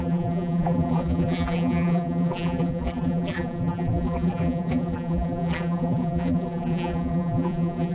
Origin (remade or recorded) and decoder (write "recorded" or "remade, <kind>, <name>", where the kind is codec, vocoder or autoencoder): remade, vocoder, BigVGAN v2